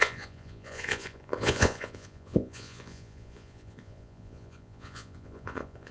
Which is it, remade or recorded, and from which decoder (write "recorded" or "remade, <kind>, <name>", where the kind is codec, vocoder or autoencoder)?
remade, vocoder, Vocos